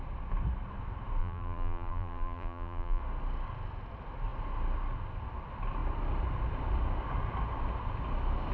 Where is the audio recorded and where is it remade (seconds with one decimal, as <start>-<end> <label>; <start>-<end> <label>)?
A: 0.0-1.2 recorded; 1.2-3.0 remade; 3.0-8.5 recorded